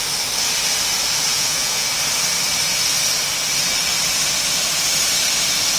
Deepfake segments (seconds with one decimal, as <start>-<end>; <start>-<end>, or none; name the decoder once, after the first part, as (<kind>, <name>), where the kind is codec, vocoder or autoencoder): 1.3-1.9 (vocoder, Vocos)

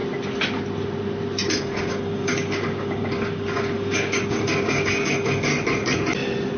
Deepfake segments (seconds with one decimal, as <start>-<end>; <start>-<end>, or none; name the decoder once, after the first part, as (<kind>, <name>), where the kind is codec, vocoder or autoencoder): 1.5-5.5 (codec, DAC)

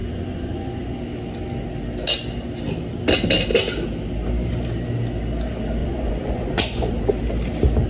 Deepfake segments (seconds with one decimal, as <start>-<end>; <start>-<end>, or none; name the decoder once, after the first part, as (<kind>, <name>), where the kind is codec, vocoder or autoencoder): 0.0-1.0 (vocoder, Vocos); 5.8-6.9

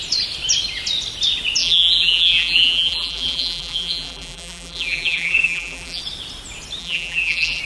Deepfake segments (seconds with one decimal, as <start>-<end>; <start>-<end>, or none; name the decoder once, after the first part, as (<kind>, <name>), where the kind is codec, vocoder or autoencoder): 1.6-6.0 (vocoder, BigVGAN v2); 6.8-7.6